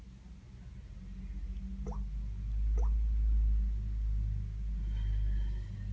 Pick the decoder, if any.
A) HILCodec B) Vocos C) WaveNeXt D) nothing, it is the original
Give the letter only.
D